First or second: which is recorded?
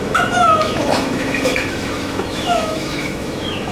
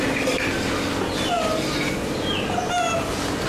second